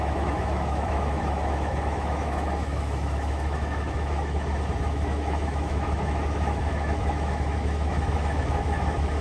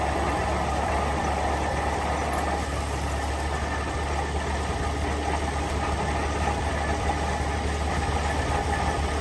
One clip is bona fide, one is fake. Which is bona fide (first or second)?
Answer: second